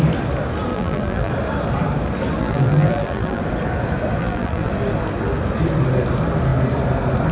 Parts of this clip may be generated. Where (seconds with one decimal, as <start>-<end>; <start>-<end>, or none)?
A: 0.7-1.3; 2.4-3.4; 4.2-4.7